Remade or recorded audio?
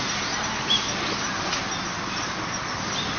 recorded